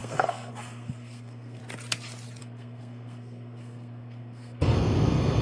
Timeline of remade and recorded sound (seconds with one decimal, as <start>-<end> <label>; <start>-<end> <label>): 0.0-1.6 remade; 1.6-2.4 recorded; 2.4-5.4 remade